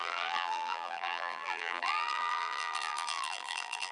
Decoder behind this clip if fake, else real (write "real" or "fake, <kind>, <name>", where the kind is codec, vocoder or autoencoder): fake, vocoder, BigVGAN v2